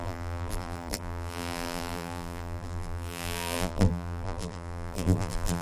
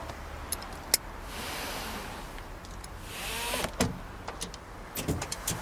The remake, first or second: first